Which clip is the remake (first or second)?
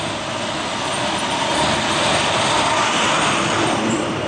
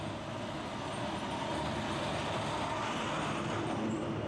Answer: first